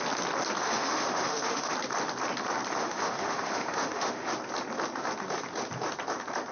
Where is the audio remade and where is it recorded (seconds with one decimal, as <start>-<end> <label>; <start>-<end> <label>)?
0.0-0.6 recorded; 0.6-1.7 remade; 1.7-2.8 recorded; 2.8-4.3 remade; 4.3-6.5 recorded

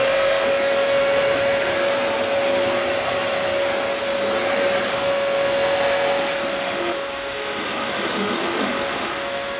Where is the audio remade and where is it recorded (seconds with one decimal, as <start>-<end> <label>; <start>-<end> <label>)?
0.0-1.7 remade; 1.7-4.9 recorded; 4.9-9.6 remade

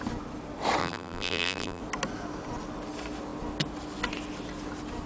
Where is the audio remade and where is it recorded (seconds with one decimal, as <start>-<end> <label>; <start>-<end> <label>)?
0.0-0.8 recorded; 0.8-1.8 remade; 1.8-5.1 recorded

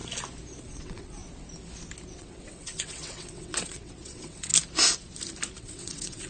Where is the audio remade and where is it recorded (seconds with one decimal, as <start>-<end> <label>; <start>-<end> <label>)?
0.0-0.6 recorded; 0.6-1.2 remade; 1.2-2.1 recorded; 2.1-4.5 remade; 4.5-5.6 recorded; 5.6-6.3 remade

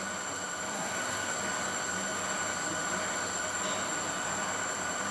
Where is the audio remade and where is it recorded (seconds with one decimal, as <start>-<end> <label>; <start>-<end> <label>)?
0.0-0.7 recorded; 0.7-1.4 remade; 1.4-5.1 recorded

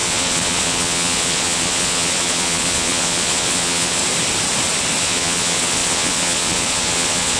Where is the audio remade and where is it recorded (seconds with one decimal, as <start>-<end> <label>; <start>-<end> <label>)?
0.0-4.0 remade; 4.0-5.0 recorded; 5.0-7.4 remade

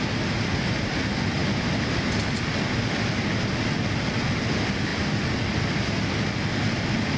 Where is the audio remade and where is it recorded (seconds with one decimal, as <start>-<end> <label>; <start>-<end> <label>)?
0.0-7.2 recorded